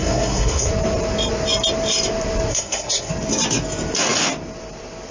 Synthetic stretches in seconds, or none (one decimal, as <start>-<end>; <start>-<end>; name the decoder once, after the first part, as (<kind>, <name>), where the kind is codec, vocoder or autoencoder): 0.0-0.7 (codec, SNAC); 2.5-3.1